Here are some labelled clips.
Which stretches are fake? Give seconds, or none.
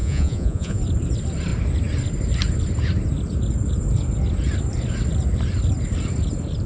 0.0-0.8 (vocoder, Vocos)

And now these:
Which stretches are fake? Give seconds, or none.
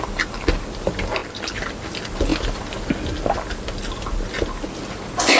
none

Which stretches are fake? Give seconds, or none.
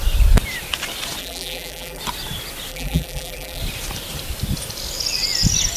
1.2-2.0 (vocoder, BigVGAN v2); 2.7-3.6